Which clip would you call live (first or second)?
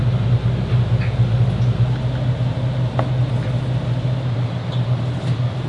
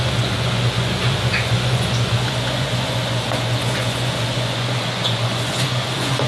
first